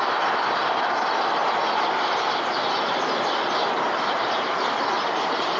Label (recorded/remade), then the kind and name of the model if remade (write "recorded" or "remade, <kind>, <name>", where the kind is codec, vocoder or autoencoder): recorded